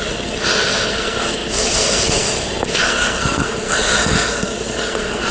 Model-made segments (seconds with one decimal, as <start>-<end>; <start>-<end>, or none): 0.0-5.3